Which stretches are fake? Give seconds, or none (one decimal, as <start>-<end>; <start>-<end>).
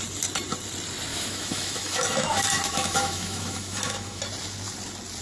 1.1-4.2